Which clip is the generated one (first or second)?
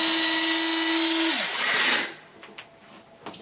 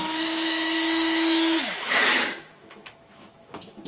second